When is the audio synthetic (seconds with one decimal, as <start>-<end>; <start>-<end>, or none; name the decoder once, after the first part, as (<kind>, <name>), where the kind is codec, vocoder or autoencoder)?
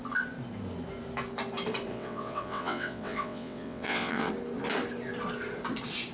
1.9-4.3 (vocoder, WaveNeXt)